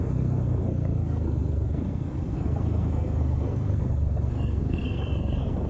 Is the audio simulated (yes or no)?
yes